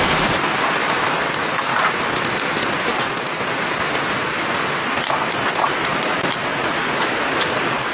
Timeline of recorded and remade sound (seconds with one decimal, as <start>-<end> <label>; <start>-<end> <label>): 0.0-7.9 recorded